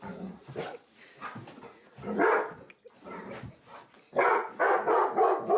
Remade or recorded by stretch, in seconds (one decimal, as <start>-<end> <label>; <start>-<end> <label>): 0.0-5.6 recorded